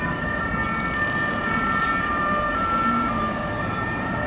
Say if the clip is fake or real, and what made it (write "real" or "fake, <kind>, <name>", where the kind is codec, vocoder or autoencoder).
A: real